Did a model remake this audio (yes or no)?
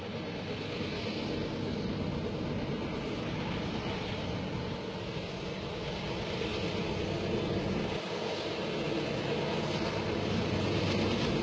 no